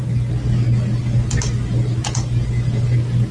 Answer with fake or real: real